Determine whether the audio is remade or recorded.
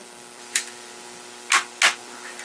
recorded